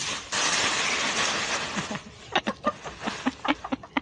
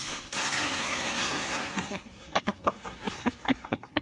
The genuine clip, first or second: first